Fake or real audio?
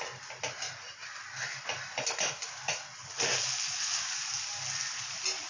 real